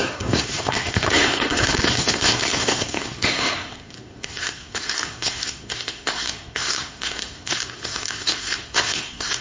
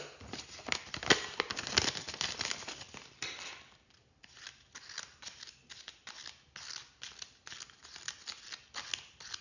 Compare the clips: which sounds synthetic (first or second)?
first